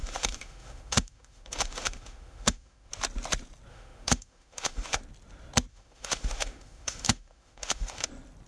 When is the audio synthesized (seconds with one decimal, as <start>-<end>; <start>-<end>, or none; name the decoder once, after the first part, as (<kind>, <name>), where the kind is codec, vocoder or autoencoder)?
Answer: 0.0-2.9 (autoencoder, DAC-VAE); 3.7-5.0; 5.7-8.1